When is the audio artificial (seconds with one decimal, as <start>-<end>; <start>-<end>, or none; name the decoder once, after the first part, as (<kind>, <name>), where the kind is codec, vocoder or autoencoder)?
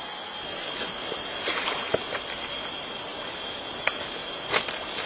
none